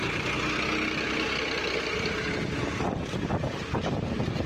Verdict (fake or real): real